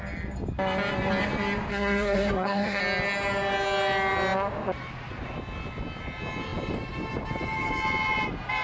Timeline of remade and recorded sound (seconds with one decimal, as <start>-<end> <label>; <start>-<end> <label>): 0.0-1.7 recorded; 1.7-2.8 remade; 2.8-8.6 recorded